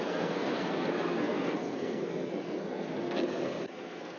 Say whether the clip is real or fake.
fake